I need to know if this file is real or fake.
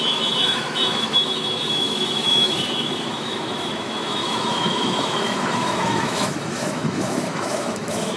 fake